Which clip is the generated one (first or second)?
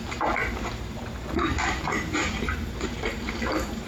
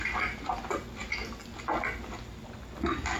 first